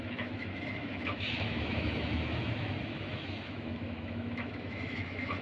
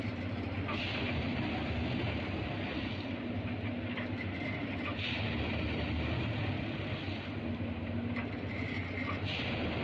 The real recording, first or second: second